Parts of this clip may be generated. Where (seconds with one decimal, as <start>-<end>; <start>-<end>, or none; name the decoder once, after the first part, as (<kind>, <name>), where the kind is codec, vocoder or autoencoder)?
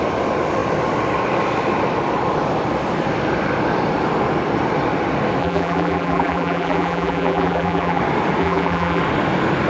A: 5.4-8.0 (vocoder, BigVGAN v2); 8.4-9.0